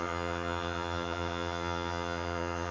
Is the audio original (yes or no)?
no